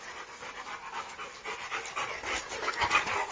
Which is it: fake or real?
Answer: real